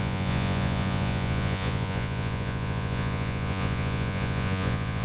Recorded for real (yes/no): no